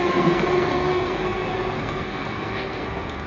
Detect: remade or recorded remade